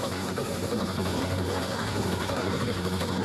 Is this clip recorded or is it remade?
remade